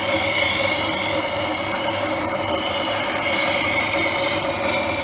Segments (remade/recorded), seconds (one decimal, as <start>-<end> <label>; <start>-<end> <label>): 0.0-1.5 recorded; 1.5-4.5 remade; 4.5-5.0 recorded